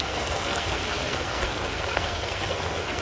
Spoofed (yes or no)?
yes